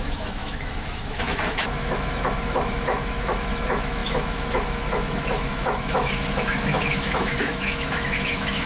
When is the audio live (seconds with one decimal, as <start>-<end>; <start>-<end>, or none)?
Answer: none